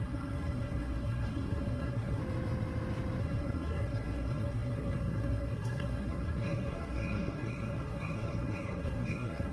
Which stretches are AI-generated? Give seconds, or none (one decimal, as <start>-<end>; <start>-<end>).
0.0-2.2; 3.2-9.5